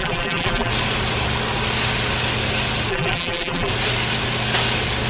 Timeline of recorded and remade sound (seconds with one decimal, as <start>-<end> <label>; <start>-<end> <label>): 0.0-0.7 remade; 0.7-2.9 recorded; 2.9-3.7 remade; 3.7-5.1 recorded